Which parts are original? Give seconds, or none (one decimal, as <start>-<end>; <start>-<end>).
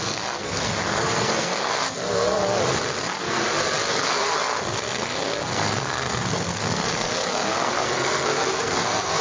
2.4-3.0; 3.4-3.9